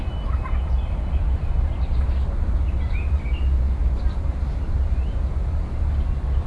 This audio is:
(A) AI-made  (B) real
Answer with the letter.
B